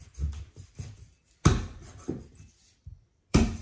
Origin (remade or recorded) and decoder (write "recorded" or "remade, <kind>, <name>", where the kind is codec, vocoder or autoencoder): remade, vocoder, BigVGAN v2